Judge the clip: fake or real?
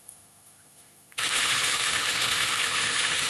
fake